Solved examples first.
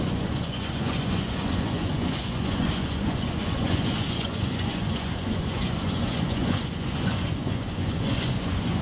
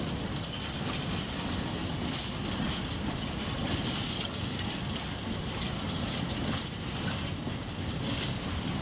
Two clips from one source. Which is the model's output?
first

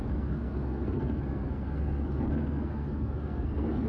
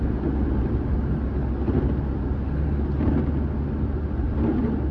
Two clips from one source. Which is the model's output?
first